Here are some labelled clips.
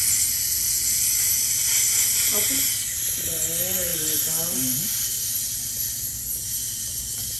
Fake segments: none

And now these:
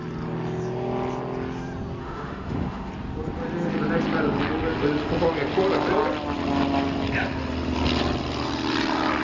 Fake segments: 2.0-2.9 (autoencoder, DAC-VAE)

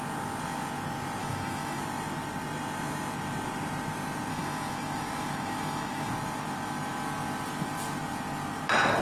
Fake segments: 1.2-1.8 (autoencoder, DAC-VAE); 4.3-6.1

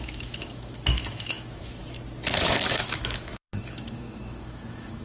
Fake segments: 0.0-1.8 (autoencoder, DAC-VAE); 2.4-5.0

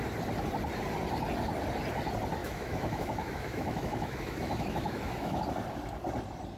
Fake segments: 2.4-5.4 (autoencoder, DAC-VAE)